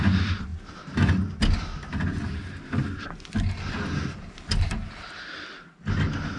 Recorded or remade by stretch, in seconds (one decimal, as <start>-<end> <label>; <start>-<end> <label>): 0.0-6.4 recorded